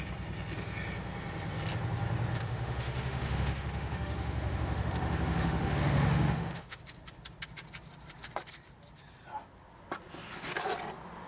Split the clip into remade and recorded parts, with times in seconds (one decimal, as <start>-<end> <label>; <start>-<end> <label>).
0.0-2.3 recorded; 2.3-6.8 remade; 6.8-11.3 recorded